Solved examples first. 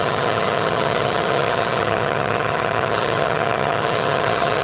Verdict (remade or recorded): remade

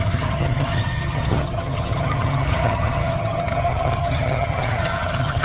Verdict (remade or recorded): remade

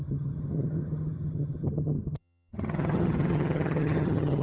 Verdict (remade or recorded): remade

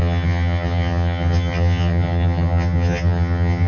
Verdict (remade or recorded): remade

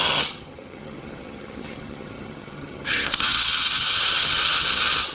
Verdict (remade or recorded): remade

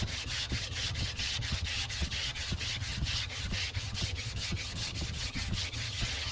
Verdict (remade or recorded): remade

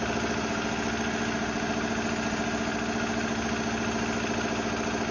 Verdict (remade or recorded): recorded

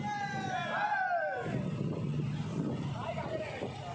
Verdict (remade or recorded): recorded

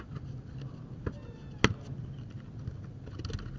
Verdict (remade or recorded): recorded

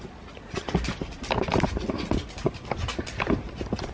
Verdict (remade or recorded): recorded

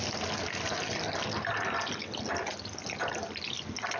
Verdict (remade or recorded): recorded